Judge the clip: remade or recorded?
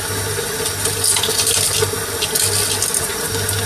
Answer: recorded